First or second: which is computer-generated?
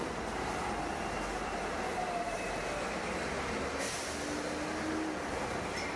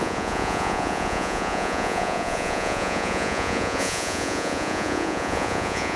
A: second